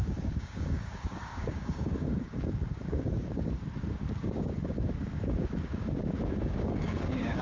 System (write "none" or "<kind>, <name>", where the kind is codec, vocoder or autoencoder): codec, DAC